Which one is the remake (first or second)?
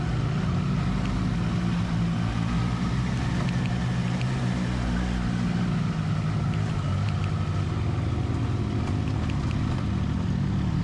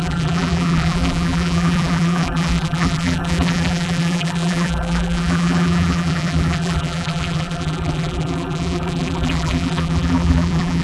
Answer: second